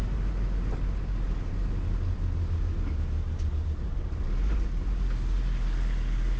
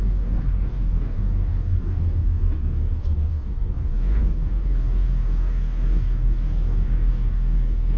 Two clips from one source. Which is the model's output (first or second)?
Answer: second